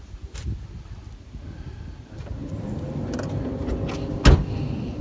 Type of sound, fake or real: real